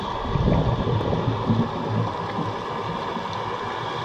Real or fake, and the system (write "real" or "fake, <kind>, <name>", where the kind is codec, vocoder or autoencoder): real